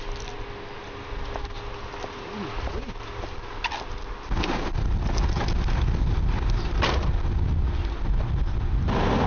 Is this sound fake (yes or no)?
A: no